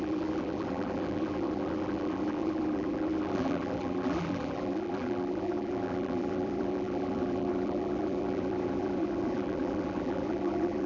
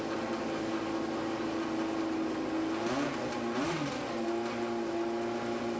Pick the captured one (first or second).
second